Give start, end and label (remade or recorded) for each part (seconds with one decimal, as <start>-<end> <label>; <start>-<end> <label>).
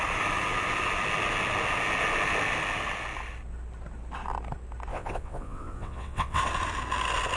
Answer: 0.0-4.9 recorded; 4.9-6.4 remade; 6.4-7.4 recorded